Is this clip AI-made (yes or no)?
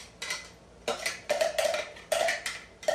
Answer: no